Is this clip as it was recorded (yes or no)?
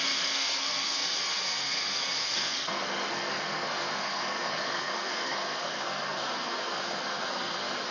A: no